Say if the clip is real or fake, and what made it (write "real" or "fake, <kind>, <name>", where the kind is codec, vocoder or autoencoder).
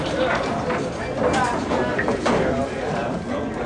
real